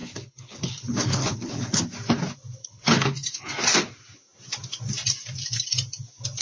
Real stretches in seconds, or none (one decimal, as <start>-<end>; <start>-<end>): 1.8-2.6; 3.5-6.4